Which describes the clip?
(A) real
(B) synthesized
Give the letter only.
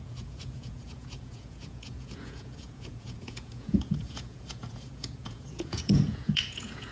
B